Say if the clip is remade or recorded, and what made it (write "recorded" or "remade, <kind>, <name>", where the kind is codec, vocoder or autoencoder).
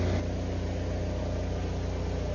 recorded